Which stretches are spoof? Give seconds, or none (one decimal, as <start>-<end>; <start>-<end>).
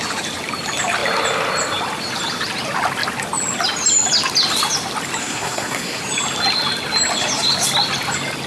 5.2-6.0